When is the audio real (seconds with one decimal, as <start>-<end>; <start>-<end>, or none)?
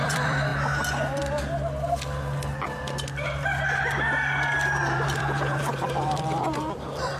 0.5-4.8